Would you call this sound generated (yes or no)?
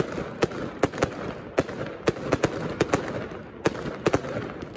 no